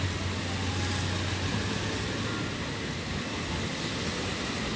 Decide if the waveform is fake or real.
real